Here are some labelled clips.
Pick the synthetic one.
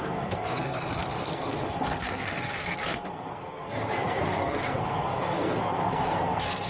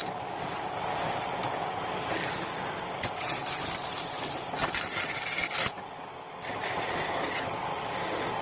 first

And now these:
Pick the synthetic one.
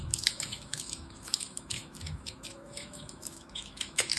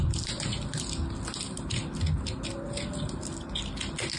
first